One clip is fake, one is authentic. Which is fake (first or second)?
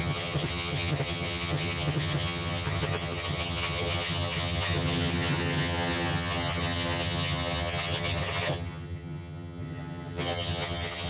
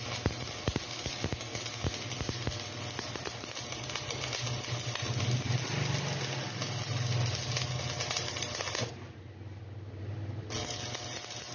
first